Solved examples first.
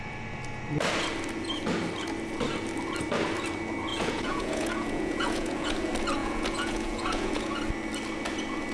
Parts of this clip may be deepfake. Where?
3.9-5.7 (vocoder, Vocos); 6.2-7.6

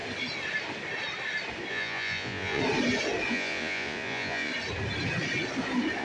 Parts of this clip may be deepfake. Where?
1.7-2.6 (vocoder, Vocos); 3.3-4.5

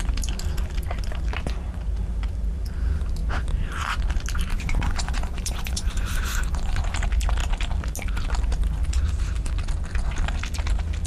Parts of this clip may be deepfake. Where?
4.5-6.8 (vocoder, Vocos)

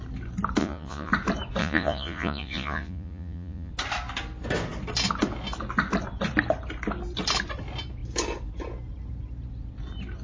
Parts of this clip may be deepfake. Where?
0.6-1.1 (vocoder, Vocos); 1.6-3.7

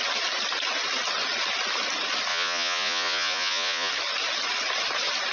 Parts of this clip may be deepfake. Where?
2.3-3.9 (vocoder, Vocos)

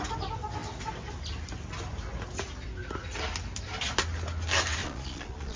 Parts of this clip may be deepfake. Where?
4.8-5.6 (vocoder, Vocos)